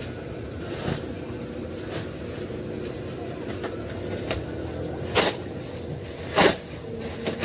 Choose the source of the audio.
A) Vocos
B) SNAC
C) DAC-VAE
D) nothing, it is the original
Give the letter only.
D